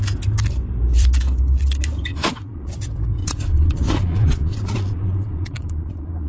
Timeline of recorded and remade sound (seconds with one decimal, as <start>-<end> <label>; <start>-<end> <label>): 0.0-2.1 recorded; 2.1-2.7 remade; 2.7-3.2 recorded; 3.2-6.3 remade